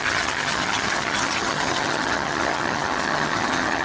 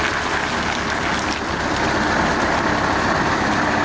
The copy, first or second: first